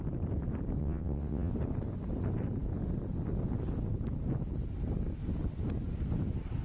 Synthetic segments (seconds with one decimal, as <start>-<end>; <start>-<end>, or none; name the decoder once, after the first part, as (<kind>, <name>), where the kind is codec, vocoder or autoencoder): 0.8-1.5 (vocoder, WaveNeXt)